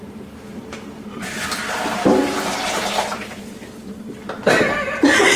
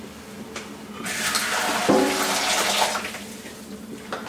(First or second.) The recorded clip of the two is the second